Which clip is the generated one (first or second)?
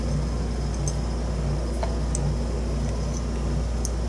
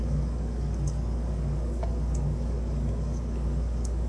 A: second